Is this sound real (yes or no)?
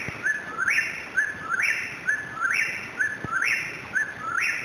no